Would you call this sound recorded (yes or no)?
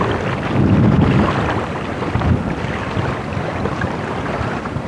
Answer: no